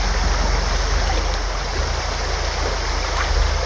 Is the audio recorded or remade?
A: recorded